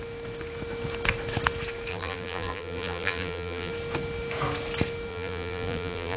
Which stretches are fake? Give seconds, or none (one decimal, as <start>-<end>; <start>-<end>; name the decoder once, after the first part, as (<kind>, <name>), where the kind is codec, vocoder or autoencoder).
1.9-3.7 (vocoder, BigVGAN v2); 5.1-6.2